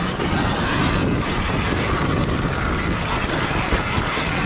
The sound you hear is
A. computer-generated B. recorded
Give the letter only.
B